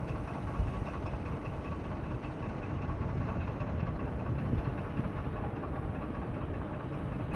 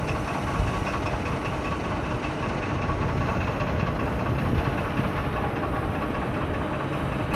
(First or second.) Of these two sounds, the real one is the second